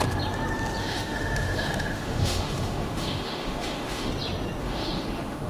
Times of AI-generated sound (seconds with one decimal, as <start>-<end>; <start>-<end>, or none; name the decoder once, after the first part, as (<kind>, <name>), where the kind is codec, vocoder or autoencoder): 0.8-4.1 (autoencoder, DAC-VAE); 4.6-5.5